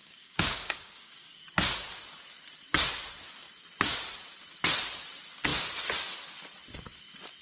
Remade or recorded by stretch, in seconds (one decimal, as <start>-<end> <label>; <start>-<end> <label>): 0.0-1.5 remade; 1.5-7.4 recorded